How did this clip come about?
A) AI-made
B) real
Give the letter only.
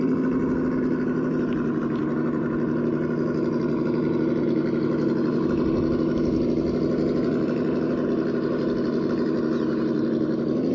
B